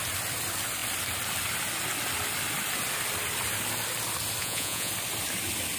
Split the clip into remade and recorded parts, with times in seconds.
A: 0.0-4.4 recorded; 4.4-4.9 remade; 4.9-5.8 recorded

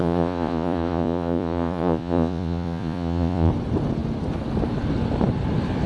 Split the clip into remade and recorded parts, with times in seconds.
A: 0.0-3.5 remade; 3.5-5.9 recorded

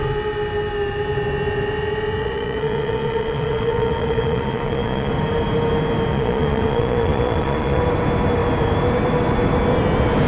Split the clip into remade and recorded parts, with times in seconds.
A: 0.0-2.2 recorded; 2.2-5.1 remade; 5.1-6.1 recorded; 6.1-7.8 remade; 7.8-10.3 recorded

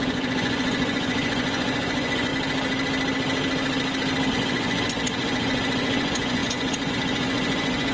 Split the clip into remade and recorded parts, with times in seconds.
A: 0.0-2.3 remade; 2.3-4.3 recorded; 4.3-7.9 remade